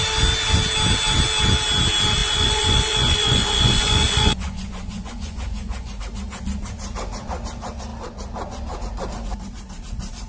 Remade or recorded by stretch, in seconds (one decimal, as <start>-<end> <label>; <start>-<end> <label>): 0.0-2.2 recorded; 2.2-6.0 remade; 6.0-10.3 recorded